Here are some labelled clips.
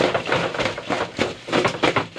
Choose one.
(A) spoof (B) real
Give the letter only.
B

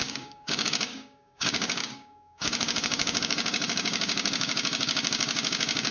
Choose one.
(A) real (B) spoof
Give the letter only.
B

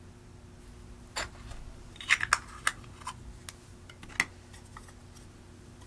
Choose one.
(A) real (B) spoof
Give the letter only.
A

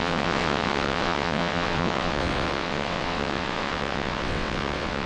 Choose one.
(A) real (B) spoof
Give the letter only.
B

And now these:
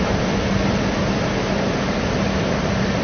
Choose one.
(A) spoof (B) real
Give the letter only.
A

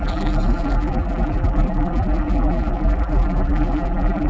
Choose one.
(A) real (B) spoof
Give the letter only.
B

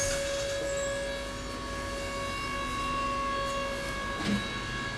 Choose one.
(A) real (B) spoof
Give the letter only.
A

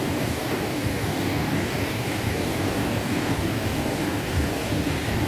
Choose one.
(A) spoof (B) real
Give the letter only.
A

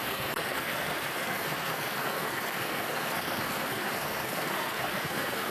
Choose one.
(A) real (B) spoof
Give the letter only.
B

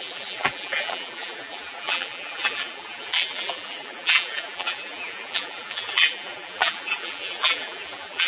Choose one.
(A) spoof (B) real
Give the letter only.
A